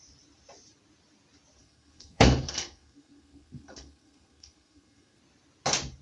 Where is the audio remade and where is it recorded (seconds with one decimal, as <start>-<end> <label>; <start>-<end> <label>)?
0.0-1.6 recorded; 1.6-5.2 remade; 5.2-6.0 recorded